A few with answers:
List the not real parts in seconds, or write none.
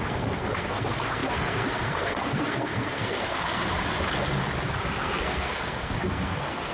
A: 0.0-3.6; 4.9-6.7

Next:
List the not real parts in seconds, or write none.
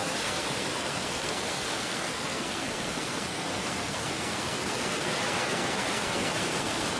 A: 0.0-7.0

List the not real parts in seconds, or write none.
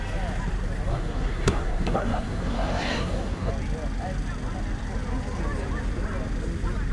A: 0.9-3.5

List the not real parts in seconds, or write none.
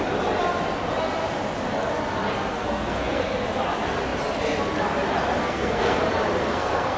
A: 2.5-3.2; 5.4-6.0; 6.4-7.0